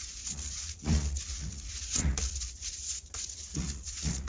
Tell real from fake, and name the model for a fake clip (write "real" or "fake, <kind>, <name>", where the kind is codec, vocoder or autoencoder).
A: fake, vocoder, Vocos